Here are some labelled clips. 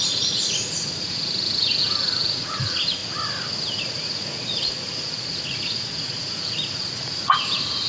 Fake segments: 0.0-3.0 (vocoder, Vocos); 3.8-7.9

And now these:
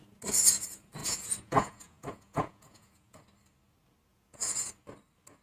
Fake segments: 1.0-3.2 (vocoder, Vocos); 4.1-4.7

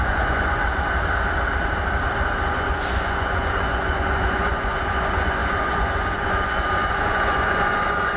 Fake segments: 0.0-0.6 (vocoder, Vocos); 2.5-8.2

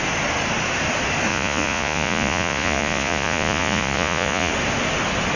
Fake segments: 1.3-4.5 (vocoder, Vocos)

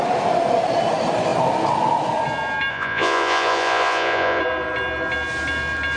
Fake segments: 2.7-4.4 (vocoder, Vocos)

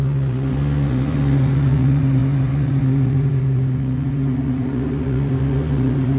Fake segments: 0.0-6.2 (vocoder, Vocos)

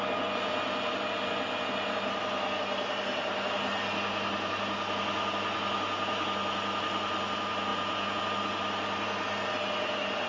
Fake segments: 7.7-8.2 (vocoder, Vocos)

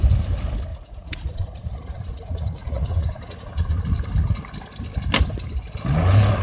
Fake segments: 0.7-3.8 (vocoder, Vocos)